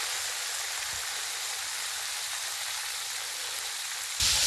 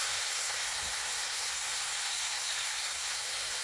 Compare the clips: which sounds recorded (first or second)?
first